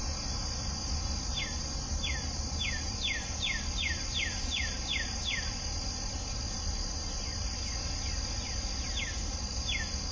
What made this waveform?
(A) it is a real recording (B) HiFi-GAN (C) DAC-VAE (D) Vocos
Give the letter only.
A